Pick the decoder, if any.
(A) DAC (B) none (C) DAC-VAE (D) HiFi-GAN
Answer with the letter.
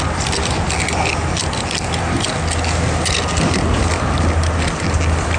B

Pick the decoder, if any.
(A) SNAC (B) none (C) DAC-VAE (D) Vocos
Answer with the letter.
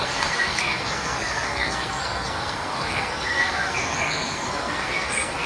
A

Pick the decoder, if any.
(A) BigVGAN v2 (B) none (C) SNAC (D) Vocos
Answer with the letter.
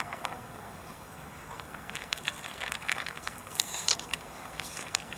C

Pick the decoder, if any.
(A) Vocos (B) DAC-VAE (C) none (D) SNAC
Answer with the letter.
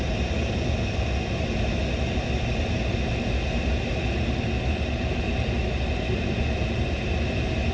C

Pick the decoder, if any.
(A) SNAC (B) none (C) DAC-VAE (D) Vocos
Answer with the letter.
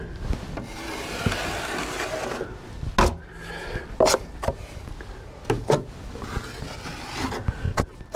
B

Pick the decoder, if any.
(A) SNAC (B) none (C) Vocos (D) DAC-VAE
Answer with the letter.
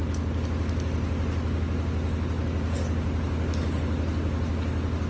B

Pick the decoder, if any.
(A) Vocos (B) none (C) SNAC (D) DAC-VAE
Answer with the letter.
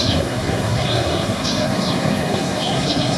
C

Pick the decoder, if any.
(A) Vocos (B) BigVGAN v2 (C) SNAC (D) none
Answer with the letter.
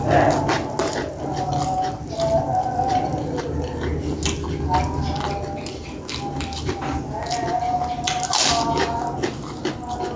D